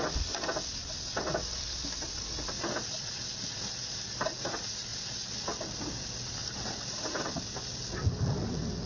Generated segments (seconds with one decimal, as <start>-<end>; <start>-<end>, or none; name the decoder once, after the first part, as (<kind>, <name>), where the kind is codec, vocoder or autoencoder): 6.4-7.3 (vocoder, BigVGAN v2)